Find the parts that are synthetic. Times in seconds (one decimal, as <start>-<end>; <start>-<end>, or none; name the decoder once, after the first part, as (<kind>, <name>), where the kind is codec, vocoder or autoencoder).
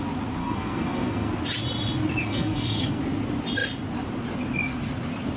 0.4-1.3 (codec, SNAC); 2.3-3.0